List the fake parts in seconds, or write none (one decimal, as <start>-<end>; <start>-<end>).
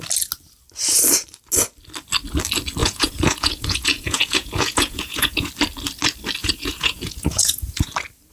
2.8-5.5; 6.4-7.9